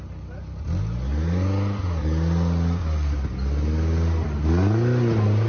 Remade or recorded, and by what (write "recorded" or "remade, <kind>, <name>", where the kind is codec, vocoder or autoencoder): recorded